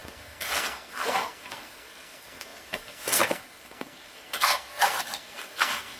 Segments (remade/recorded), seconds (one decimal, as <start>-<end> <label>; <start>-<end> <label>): 0.0-6.0 remade